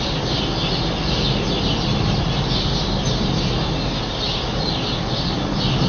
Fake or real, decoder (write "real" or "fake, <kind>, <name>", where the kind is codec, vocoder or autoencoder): real